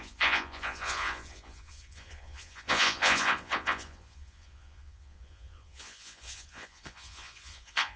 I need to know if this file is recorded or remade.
remade